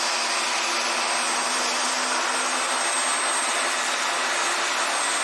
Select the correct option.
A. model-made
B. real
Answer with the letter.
B